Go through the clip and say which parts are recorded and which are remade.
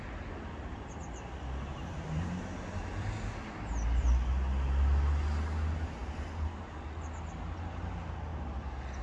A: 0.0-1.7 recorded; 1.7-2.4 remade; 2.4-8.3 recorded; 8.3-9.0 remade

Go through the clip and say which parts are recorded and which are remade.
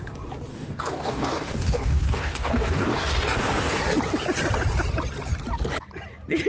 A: 0.0-0.5 recorded; 0.5-3.8 remade; 3.8-6.5 recorded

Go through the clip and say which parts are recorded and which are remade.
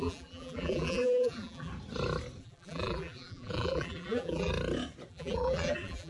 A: 0.0-1.7 remade; 1.7-2.4 recorded; 2.4-4.5 remade; 4.5-5.1 recorded; 5.1-6.1 remade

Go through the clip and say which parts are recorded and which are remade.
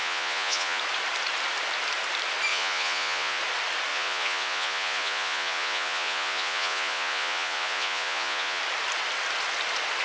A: 0.0-0.8 remade; 0.8-2.5 recorded; 2.5-3.4 remade; 3.4-3.9 recorded; 3.9-8.6 remade; 8.6-10.0 recorded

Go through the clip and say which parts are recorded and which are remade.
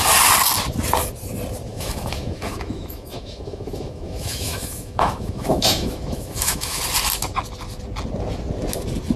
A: 0.0-1.7 recorded; 1.7-6.8 remade; 6.8-9.2 recorded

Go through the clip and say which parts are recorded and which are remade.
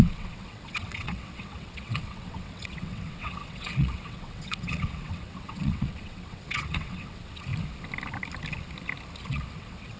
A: 0.0-7.5 remade; 7.5-9.2 recorded; 9.2-10.0 remade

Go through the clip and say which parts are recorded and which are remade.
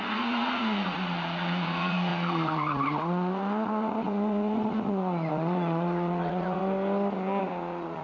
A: 0.0-6.6 remade; 6.6-7.4 recorded; 7.4-8.0 remade